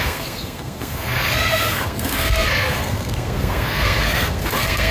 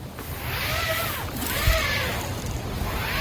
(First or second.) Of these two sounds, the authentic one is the second